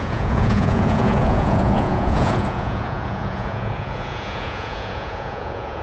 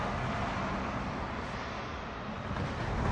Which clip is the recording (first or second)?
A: second